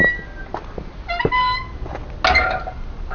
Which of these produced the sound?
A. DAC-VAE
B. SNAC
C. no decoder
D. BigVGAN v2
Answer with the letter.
C